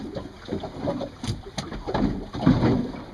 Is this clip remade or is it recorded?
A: recorded